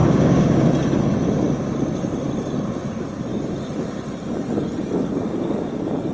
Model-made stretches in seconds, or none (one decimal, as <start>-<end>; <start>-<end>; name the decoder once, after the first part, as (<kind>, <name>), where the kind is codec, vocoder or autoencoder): 0.0-0.7 (codec, DAC)